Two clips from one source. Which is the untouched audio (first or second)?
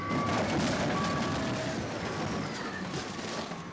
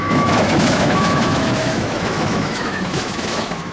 first